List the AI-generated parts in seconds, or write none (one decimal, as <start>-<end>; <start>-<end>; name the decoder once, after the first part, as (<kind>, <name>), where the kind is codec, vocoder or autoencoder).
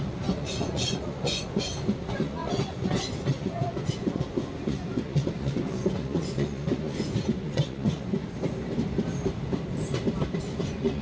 0.0-8.2 (vocoder, Vocos); 10.6-11.0